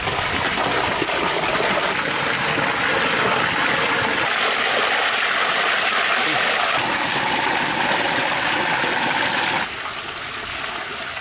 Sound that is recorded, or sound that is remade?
recorded